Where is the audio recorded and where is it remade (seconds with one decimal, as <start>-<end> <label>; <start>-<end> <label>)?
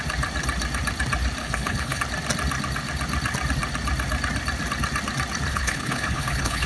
0.0-1.4 recorded; 1.4-2.0 remade; 2.0-5.5 recorded; 5.5-6.7 remade